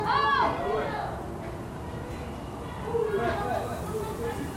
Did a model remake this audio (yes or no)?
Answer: no